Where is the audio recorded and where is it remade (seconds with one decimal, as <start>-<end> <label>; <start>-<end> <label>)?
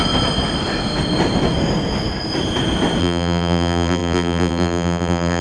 0.0-3.0 recorded; 3.0-5.4 remade